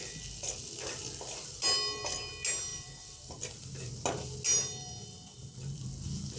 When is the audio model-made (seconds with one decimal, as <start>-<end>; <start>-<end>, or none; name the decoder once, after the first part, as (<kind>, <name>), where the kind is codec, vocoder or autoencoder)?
2.7-3.9 (vocoder, BigVGAN v2); 4.5-5.8

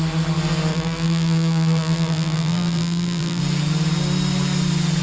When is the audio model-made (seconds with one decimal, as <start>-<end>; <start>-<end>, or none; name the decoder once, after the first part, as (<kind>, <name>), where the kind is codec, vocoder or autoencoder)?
0.7-3.4 (vocoder, BigVGAN v2)

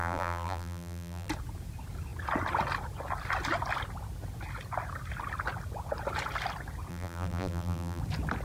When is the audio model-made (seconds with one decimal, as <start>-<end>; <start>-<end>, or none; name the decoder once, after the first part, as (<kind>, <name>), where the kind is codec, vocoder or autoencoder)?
0.0-1.3 (vocoder, BigVGAN v2); 6.9-8.0

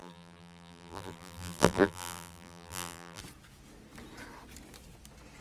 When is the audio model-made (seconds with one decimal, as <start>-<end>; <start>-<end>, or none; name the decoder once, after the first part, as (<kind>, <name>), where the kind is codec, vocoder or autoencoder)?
0.0-3.2 (vocoder, BigVGAN v2)

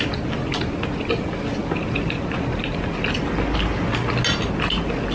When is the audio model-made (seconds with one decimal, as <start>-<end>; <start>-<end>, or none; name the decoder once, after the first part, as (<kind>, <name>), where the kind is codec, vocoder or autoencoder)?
1.6-3.3 (vocoder, BigVGAN v2)

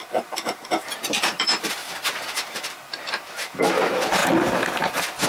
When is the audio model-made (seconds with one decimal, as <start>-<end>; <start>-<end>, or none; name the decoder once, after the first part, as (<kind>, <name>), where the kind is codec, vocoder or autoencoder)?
0.0-4.2 (vocoder, BigVGAN v2)

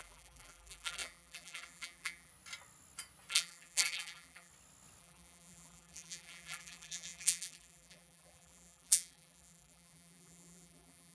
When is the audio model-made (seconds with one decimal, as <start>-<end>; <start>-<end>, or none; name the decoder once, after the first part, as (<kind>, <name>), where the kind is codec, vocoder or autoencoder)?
0.0-2.3 (vocoder, BigVGAN v2); 3.3-4.5; 5.0-11.1